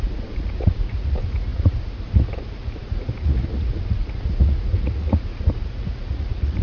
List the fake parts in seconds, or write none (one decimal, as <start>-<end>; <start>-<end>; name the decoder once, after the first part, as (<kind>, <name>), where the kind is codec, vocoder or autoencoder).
0.0-6.6 (vocoder, Vocos)